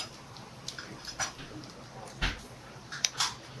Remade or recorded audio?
remade